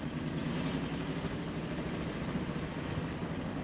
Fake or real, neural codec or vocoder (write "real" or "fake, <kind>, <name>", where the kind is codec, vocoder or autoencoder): real